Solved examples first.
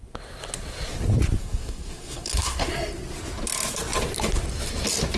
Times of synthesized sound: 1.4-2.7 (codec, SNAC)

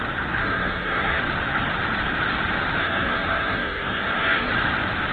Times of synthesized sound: 0.4-1.2 (codec, SNAC); 2.8-4.5

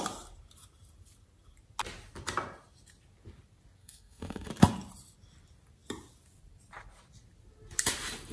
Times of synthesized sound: 3.8-4.5 (codec, SNAC)

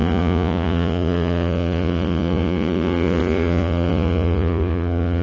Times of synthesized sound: 0.0-5.2 (vocoder, Vocos)